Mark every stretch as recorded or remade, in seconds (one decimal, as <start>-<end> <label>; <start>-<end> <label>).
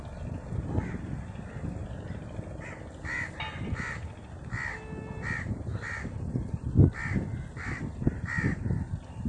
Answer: 0.0-9.3 recorded